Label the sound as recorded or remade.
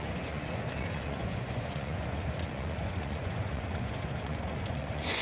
remade